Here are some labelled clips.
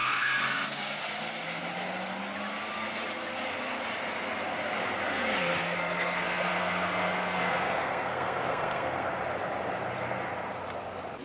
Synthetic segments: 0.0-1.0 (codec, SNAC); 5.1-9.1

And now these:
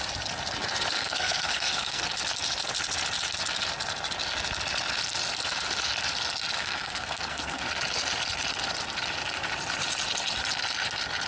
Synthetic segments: 1.0-2.0 (codec, SNAC); 6.6-7.6

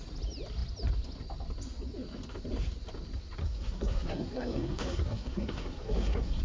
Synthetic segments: 3.4-6.4 (codec, SNAC)